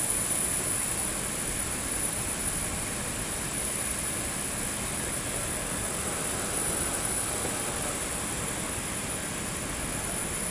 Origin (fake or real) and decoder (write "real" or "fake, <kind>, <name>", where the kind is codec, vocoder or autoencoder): real